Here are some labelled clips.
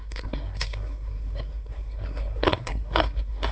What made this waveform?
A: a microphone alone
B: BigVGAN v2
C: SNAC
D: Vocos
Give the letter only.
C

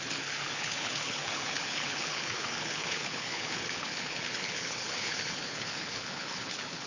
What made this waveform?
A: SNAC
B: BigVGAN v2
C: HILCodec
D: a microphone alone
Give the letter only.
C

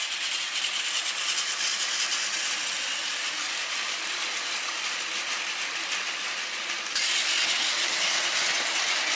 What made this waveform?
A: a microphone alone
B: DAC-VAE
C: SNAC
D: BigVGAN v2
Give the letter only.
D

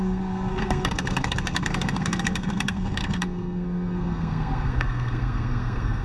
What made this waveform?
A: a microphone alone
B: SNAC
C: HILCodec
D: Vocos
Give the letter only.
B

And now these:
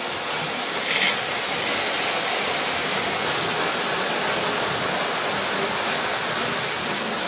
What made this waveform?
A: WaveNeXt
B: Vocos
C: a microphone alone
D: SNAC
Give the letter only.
C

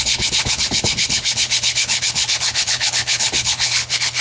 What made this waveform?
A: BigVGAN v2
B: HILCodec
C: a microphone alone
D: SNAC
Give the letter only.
B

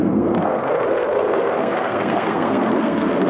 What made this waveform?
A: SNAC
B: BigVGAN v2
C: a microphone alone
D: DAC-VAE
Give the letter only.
A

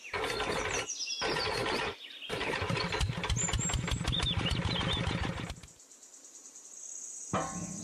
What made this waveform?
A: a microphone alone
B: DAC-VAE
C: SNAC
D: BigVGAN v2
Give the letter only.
A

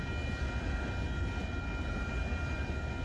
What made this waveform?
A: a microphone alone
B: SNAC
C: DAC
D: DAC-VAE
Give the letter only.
A